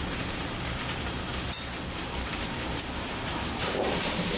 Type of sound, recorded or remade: remade